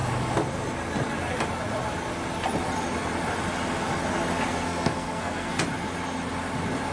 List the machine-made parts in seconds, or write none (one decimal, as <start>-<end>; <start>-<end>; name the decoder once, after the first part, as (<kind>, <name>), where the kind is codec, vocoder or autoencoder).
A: 4.5-5.5 (codec, SNAC)